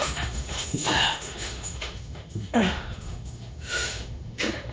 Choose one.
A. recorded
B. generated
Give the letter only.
B